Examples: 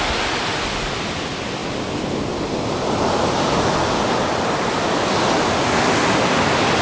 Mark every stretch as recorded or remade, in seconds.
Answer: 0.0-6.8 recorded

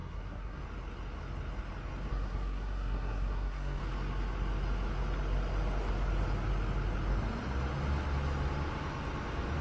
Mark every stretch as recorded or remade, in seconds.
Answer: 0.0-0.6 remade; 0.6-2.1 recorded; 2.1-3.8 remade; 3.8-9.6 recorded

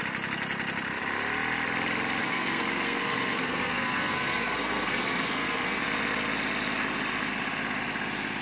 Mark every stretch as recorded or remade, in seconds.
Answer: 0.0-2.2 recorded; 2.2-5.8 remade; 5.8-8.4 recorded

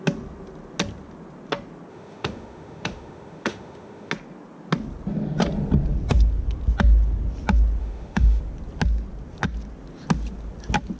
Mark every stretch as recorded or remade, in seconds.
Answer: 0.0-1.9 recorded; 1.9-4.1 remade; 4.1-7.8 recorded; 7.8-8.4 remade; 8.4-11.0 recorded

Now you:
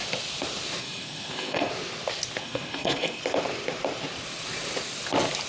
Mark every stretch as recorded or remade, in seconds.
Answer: 0.0-0.8 recorded; 0.8-1.7 remade; 1.7-2.4 recorded; 2.4-3.2 remade; 3.2-5.5 recorded

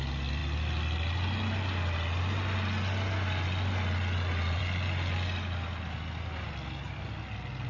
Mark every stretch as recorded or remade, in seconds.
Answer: 0.0-7.7 recorded

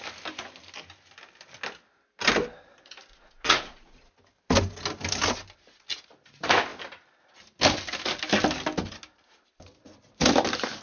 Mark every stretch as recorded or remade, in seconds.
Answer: 0.0-3.1 recorded; 3.1-4.1 remade; 4.1-10.8 recorded

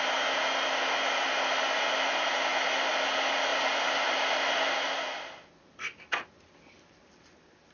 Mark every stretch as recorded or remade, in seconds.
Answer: 0.0-7.7 recorded